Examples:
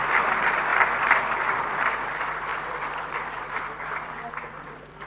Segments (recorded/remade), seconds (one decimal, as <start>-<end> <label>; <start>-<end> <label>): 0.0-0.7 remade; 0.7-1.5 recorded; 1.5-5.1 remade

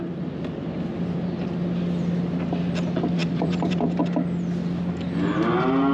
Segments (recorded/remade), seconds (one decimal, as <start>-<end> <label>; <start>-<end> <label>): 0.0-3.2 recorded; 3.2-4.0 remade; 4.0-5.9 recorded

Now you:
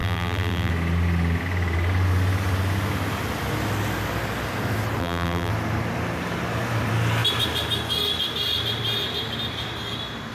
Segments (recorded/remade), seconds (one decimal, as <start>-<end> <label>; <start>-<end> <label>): 0.0-0.7 remade; 0.7-5.0 recorded; 5.0-5.5 remade; 5.5-10.3 recorded